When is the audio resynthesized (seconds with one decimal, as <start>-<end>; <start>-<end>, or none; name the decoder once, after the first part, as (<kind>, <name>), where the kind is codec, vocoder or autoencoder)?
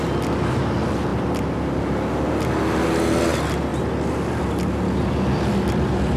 none